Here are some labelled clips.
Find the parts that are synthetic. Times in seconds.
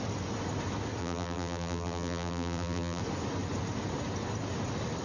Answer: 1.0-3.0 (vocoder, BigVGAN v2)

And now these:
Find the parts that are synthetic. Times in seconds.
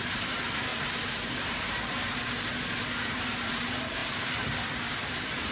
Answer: 0.0-2.5 (vocoder, BigVGAN v2); 3.0-5.5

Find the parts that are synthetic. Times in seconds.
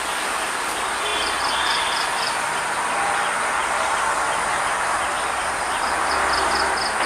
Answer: none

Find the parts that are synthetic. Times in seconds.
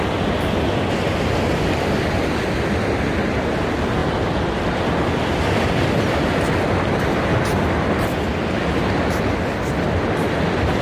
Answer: none